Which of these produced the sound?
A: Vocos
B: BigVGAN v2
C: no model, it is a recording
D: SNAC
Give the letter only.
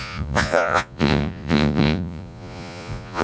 A